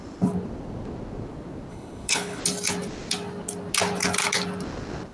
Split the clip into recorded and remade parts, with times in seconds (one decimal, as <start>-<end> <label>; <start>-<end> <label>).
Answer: 0.0-1.7 recorded; 1.7-2.4 remade; 2.4-5.1 recorded